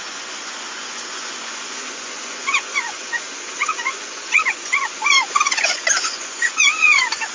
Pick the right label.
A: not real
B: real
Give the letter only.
A